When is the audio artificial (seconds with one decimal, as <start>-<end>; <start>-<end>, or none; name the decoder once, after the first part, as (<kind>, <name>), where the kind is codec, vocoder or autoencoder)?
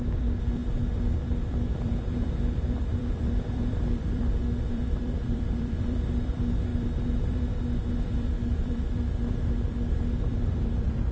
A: 0.0-11.1 (vocoder, BigVGAN v2)